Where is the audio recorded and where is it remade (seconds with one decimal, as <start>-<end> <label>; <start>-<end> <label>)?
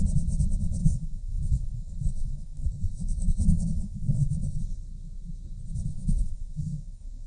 0.0-0.8 recorded; 0.8-4.6 remade; 4.6-5.9 recorded; 5.9-7.3 remade